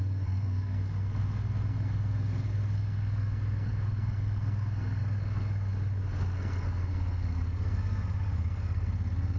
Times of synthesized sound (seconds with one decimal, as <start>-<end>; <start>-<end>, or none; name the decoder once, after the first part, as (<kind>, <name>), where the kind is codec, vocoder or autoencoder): 0.0-5.7 (codec, SNAC); 6.2-9.4